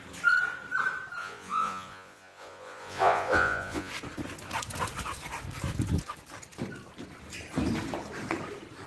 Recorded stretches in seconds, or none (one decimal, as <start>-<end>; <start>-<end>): 0.0-1.2; 3.9-8.9